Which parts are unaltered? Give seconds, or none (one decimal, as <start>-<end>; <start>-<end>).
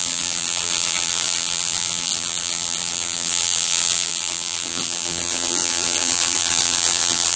none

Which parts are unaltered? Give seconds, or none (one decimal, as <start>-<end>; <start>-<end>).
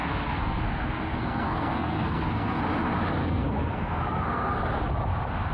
2.6-3.2; 4.5-5.5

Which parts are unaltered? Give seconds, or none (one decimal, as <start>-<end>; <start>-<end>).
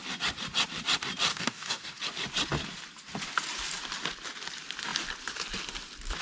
0.0-1.3; 2.0-6.2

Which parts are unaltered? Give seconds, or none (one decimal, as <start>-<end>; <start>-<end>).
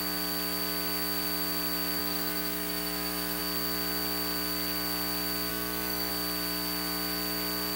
0.0-2.0; 3.4-5.5; 6.1-7.8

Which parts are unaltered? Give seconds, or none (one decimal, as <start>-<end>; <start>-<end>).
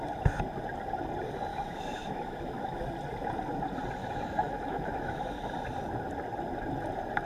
0.0-1.5; 2.8-4.0; 5.5-7.3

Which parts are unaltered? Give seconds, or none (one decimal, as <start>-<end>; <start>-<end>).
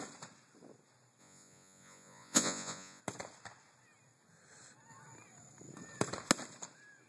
0.0-1.2; 3.0-7.1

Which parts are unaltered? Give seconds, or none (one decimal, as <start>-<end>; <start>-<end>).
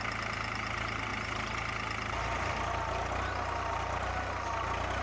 0.0-5.0